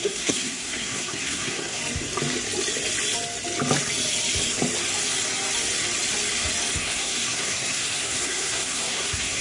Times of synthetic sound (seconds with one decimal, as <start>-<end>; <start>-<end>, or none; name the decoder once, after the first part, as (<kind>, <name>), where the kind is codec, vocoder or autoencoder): 0.0-1.8 (codec, SNAC); 6.8-9.4